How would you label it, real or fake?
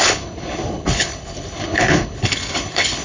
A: fake